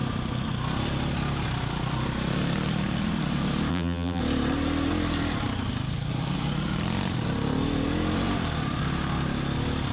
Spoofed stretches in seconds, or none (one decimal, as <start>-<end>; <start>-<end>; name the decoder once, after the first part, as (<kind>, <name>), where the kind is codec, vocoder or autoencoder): 3.7-4.2 (vocoder, BigVGAN v2)